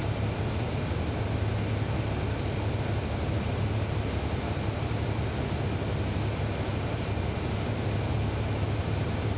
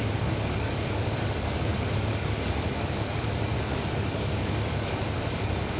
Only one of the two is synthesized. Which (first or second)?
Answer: second